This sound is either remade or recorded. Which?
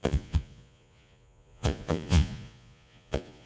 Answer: remade